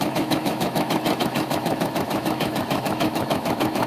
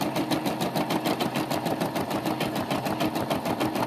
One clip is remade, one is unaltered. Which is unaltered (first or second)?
second